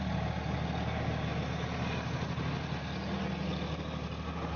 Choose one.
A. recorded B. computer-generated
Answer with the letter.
A